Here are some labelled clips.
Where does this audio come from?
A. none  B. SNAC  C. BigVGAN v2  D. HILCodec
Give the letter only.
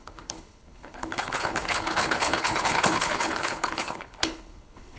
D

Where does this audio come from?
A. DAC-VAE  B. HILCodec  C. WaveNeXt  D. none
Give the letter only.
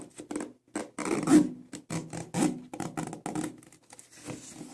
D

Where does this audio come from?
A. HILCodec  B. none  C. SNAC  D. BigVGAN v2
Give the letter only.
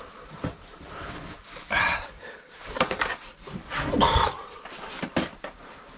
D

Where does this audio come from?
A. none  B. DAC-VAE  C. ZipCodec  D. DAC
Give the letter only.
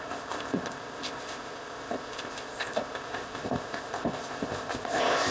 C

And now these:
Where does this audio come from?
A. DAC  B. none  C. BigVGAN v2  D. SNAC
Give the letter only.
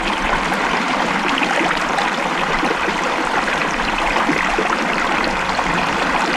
C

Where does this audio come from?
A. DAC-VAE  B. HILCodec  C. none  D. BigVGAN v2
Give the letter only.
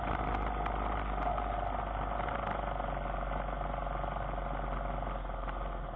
C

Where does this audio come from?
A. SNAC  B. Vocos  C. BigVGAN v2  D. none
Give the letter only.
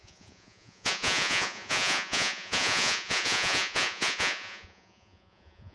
B